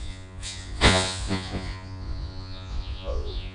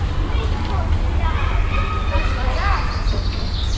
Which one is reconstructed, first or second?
first